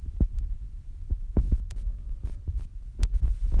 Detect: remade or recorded remade